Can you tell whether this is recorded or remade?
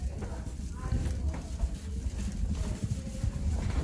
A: recorded